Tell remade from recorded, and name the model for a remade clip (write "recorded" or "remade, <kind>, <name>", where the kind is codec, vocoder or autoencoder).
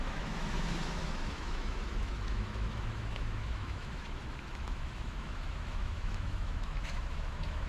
remade, autoencoder, DAC-VAE